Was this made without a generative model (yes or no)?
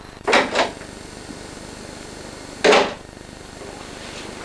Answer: yes